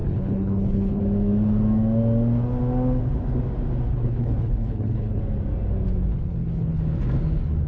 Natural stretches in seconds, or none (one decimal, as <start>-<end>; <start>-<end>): 1.0-3.9; 5.2-6.1; 6.8-7.7